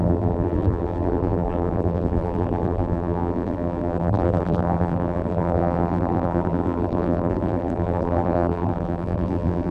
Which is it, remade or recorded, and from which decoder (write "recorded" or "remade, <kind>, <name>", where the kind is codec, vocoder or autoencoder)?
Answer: remade, vocoder, BigVGAN v2